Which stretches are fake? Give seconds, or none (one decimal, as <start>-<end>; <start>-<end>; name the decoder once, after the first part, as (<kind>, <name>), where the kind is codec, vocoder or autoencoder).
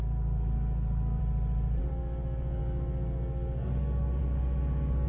0.0-1.2 (codec, SNAC); 1.8-5.1